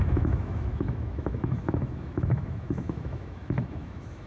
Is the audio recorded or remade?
remade